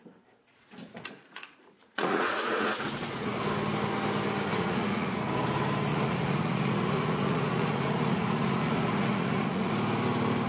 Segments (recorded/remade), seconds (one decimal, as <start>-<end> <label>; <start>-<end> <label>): 0.0-0.4 recorded; 0.4-3.4 remade; 3.4-4.5 recorded; 4.5-5.2 remade; 5.2-5.9 recorded; 5.9-9.7 remade; 9.7-10.5 recorded